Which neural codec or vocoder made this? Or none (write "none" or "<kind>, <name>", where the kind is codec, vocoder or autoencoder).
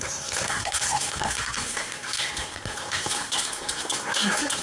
codec, SNAC